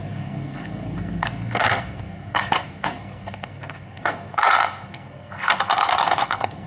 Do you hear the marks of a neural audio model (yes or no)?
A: yes